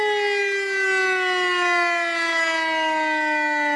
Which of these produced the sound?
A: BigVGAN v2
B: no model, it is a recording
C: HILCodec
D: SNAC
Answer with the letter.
B